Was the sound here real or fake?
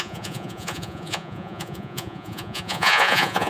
fake